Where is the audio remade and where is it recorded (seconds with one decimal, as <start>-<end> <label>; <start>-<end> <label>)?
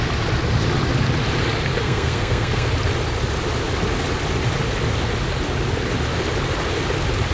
0.0-1.8 recorded; 1.8-2.7 remade; 2.7-7.3 recorded